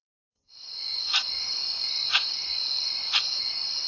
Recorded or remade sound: remade